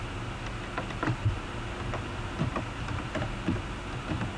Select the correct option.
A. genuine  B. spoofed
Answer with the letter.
A